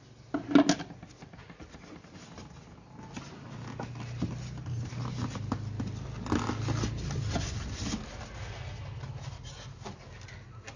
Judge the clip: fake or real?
real